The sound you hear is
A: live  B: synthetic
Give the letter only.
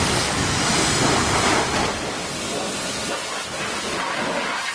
A